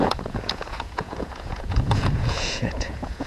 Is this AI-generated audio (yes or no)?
yes